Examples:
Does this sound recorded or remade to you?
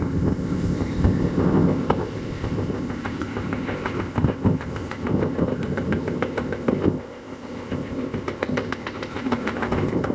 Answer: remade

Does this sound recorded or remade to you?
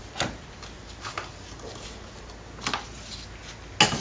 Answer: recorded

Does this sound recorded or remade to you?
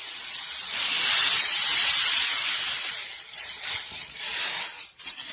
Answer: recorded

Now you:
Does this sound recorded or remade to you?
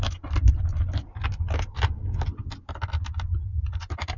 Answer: recorded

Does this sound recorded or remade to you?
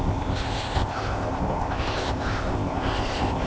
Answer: remade